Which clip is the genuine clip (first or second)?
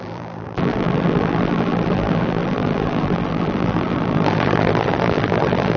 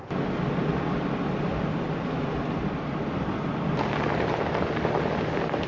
second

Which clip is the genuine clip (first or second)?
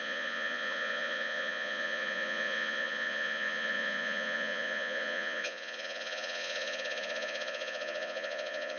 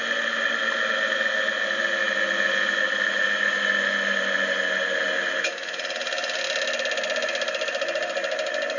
second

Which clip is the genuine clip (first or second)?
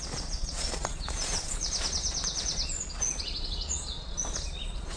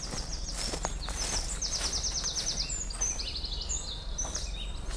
second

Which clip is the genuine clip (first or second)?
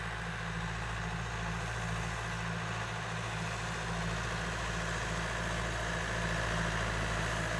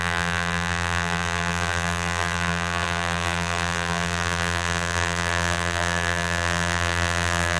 first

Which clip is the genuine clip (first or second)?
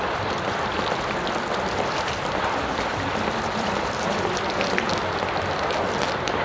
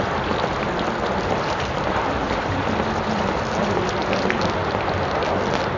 second